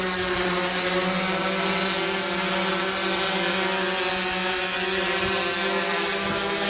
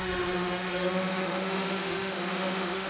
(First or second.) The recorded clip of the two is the first